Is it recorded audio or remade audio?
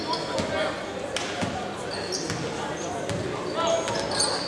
recorded